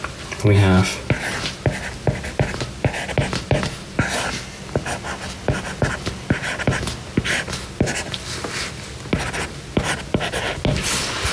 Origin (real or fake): real